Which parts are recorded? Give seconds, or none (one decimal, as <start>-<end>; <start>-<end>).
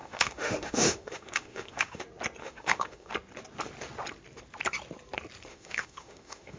2.0-2.4; 3.1-5.5